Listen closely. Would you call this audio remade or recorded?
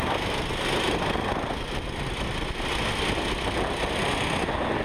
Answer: recorded